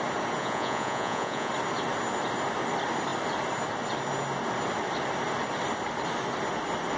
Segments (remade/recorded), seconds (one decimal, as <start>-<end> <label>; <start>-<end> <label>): 0.0-0.4 recorded; 0.4-1.5 remade; 1.5-7.0 recorded